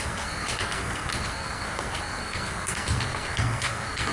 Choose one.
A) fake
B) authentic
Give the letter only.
A